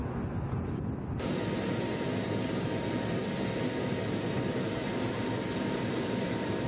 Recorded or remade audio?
recorded